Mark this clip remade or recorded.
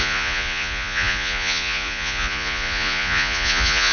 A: remade